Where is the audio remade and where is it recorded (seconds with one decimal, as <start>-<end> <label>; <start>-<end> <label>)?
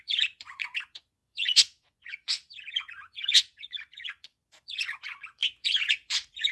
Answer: 0.0-6.5 remade